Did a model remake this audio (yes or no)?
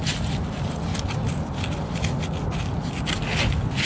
no